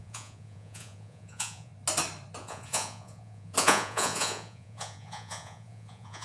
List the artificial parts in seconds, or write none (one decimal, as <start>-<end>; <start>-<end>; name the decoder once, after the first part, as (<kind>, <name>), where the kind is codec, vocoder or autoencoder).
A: 0.0-1.7 (vocoder, Vocos); 2.4-6.2